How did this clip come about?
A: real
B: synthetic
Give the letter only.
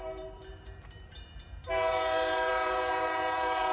B